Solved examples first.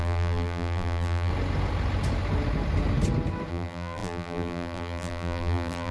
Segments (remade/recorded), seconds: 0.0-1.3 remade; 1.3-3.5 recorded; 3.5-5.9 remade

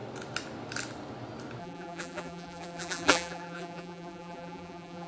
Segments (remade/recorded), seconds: 0.0-1.6 recorded; 1.6-5.1 remade

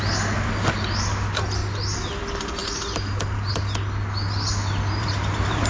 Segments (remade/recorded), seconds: 0.0-4.6 recorded; 4.6-5.7 remade

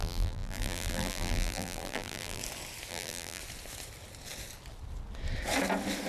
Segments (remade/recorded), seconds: 0.0-2.4 remade; 2.4-2.9 recorded; 2.9-3.4 remade; 3.4-6.1 recorded

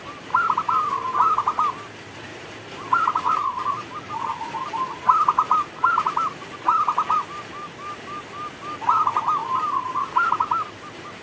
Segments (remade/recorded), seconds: 0.0-2.3 recorded; 2.3-4.1 remade; 4.1-9.4 recorded; 9.4-10.0 remade; 10.0-11.2 recorded

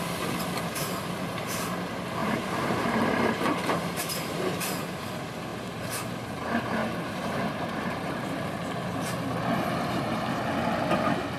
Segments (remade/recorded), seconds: 0.0-2.2 recorded; 2.2-5.1 remade; 5.1-6.8 recorded; 6.8-8.7 remade; 8.7-11.4 recorded

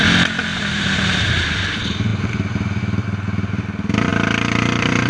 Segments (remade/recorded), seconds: 0.0-0.5 recorded; 0.5-1.3 remade; 1.3-4.1 recorded; 4.1-5.1 remade

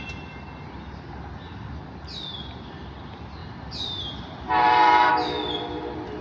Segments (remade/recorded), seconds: 0.0-3.4 recorded; 3.4-5.1 remade; 5.1-6.2 recorded